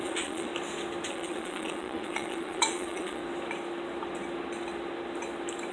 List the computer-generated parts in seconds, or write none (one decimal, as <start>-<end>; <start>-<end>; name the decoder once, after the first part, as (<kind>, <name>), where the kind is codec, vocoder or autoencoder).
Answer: 0.0-0.5 (vocoder, Vocos); 1.1-3.2